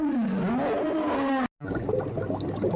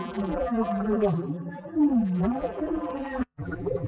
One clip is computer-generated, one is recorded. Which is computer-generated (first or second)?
second